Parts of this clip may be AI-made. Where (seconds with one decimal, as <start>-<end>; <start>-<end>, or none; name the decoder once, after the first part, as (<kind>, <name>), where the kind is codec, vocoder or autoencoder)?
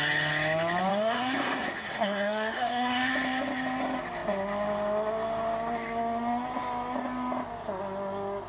0.9-3.1 (codec, SNAC)